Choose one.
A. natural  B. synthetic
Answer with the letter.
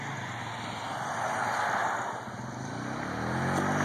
A